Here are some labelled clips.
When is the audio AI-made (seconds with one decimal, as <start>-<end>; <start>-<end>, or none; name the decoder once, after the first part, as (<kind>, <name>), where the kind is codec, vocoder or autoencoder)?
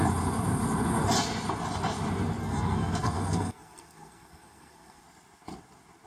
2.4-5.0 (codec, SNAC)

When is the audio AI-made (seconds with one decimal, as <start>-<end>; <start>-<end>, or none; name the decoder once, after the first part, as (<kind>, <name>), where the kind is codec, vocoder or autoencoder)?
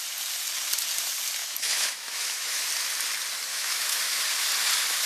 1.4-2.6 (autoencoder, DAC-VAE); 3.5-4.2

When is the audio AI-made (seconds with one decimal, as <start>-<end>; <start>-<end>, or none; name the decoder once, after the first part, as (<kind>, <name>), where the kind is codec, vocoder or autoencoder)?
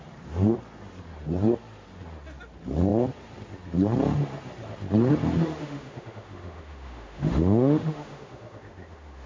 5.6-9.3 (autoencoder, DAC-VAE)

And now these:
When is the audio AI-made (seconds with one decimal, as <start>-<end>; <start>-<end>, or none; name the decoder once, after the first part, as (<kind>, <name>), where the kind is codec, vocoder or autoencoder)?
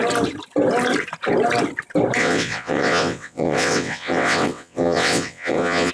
2.2-5.9 (vocoder, WaveNeXt)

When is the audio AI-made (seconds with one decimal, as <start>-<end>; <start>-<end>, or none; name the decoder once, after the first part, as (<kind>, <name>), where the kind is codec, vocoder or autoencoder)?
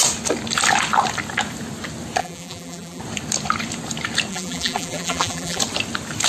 2.2-3.0 (vocoder, BigVGAN v2); 4.3-5.6